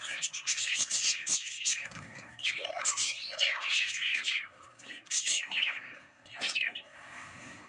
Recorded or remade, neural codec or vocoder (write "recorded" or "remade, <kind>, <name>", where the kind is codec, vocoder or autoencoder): remade, codec, SNAC